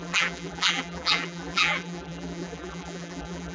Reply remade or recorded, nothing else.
remade